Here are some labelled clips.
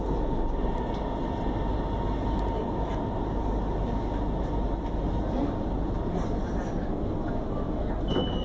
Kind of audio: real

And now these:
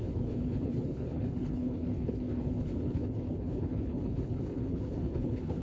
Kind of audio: fake